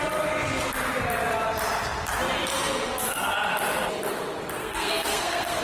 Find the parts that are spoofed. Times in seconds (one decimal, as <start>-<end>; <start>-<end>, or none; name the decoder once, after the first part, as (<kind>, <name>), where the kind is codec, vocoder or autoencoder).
4.6-5.6 (codec, SNAC)